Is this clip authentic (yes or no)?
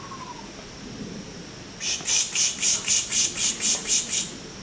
yes